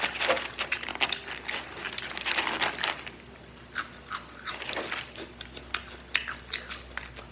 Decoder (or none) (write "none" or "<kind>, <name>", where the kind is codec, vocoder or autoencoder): none